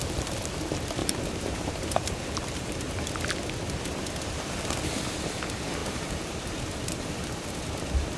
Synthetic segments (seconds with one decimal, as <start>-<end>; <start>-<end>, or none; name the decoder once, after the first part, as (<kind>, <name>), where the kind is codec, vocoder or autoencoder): 1.0-2.9 (vocoder, BigVGAN v2); 5.8-6.6